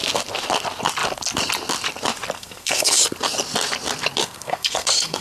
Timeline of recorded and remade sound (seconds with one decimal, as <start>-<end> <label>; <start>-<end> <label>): 0.0-2.4 recorded; 2.4-3.0 remade; 3.0-4.2 recorded; 4.2-5.2 remade